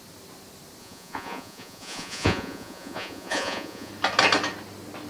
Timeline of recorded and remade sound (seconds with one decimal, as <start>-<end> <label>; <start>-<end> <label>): 0.0-0.8 recorded; 0.8-3.9 remade; 3.9-5.1 recorded